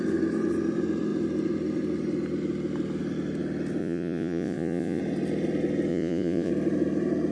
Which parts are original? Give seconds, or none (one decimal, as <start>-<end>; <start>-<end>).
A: 0.0-3.8; 5.0-5.9; 6.5-7.3